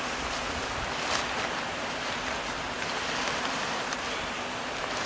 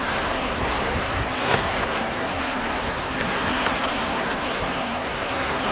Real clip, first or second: first